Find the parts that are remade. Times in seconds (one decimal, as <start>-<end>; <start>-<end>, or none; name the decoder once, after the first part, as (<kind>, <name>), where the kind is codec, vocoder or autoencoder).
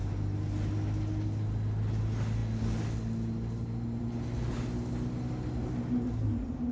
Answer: none